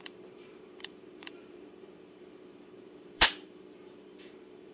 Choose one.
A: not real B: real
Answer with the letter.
A